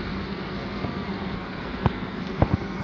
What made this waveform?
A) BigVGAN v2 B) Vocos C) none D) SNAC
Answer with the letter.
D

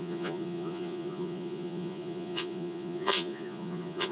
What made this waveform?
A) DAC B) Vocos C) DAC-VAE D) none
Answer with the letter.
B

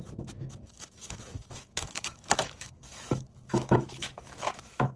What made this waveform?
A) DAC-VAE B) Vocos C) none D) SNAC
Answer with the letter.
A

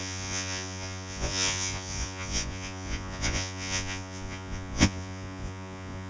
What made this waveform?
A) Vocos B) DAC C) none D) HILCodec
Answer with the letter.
A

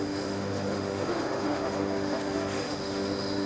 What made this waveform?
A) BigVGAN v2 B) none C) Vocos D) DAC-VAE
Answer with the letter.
D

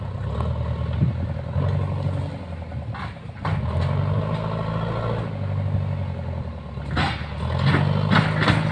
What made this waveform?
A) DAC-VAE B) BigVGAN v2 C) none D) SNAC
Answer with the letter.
C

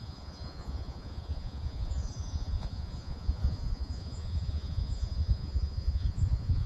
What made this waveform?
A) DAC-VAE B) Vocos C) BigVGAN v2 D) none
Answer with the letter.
B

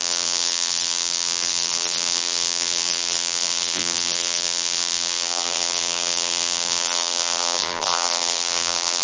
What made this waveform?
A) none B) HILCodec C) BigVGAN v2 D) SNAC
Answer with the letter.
C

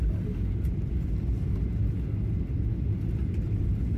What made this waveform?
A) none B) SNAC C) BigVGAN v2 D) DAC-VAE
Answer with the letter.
A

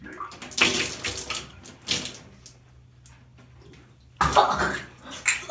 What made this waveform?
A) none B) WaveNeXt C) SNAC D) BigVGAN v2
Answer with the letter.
A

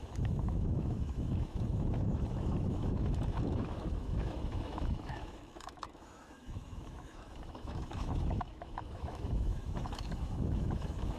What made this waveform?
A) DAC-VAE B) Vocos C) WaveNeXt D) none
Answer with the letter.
A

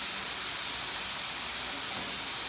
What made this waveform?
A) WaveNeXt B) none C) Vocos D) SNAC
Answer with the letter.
B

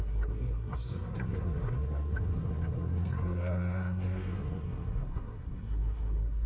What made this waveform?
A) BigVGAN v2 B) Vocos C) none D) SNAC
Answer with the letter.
D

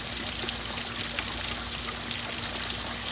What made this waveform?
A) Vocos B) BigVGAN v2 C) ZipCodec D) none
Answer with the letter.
D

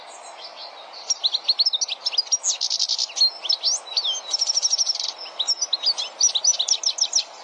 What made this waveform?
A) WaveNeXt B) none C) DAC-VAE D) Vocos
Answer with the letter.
B